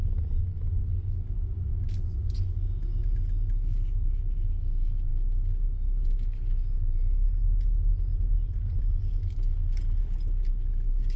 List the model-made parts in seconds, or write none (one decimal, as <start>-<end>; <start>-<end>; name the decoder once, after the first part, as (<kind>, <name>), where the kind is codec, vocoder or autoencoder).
none